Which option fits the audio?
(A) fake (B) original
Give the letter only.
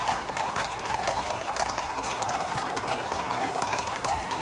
A